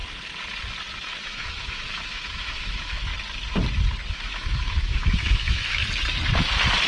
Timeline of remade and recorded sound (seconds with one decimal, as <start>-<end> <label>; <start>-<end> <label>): 0.0-1.2 recorded; 1.2-3.1 remade; 3.1-4.1 recorded; 4.1-5.8 remade; 5.8-6.9 recorded